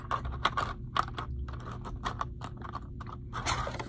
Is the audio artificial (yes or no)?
no